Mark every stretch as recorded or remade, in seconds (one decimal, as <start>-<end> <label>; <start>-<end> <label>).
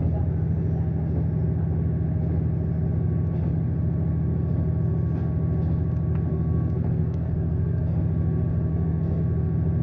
0.0-6.3 recorded; 6.3-8.0 remade; 8.0-8.7 recorded; 8.7-9.2 remade; 9.2-9.8 recorded